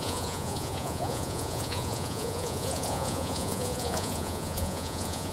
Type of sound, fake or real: fake